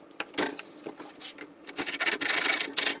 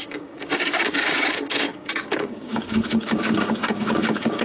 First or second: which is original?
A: first